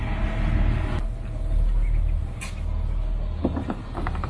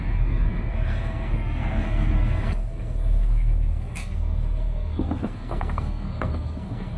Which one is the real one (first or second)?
first